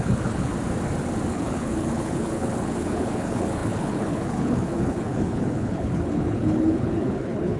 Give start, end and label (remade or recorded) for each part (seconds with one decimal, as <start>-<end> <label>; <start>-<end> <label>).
0.0-0.5 remade; 0.5-1.3 recorded; 1.3-7.6 remade